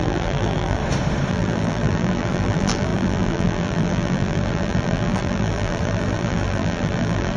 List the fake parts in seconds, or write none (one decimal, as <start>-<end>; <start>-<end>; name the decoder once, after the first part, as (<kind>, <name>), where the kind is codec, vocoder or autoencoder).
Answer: 0.0-0.8 (vocoder, BigVGAN v2); 1.3-7.4